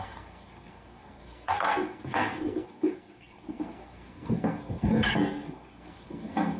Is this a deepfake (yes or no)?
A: yes